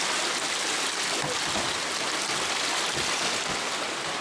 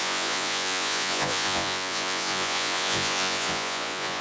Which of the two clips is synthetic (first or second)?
second